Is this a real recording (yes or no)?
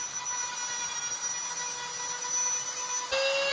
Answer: yes